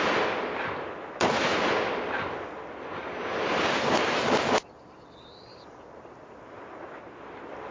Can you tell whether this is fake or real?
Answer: real